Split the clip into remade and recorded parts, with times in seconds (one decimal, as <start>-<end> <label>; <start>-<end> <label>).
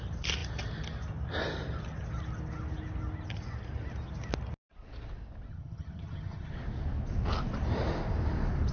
0.0-5.5 recorded; 5.5-6.5 remade; 6.5-8.7 recorded